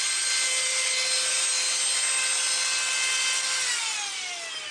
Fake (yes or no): no